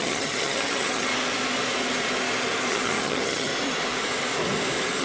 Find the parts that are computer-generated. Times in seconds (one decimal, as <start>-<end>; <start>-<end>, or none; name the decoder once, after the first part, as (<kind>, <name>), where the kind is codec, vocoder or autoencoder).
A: 0.0-1.1 (vocoder, HiFi-GAN); 2.7-3.5